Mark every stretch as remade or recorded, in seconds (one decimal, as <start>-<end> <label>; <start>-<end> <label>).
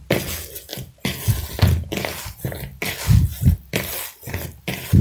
0.0-5.0 recorded